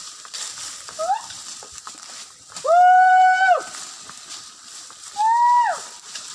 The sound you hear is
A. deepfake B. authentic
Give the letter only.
B